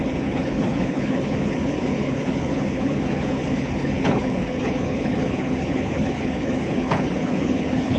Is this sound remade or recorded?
remade